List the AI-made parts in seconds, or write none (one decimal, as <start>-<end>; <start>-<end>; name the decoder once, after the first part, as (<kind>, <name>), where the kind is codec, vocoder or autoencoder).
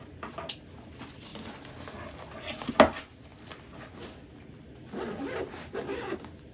none